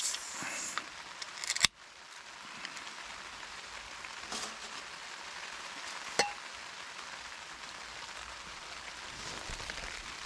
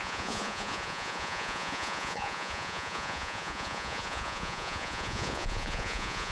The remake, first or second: second